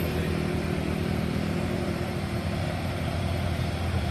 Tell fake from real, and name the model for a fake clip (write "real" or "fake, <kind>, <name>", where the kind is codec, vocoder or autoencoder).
fake, vocoder, BigVGAN v2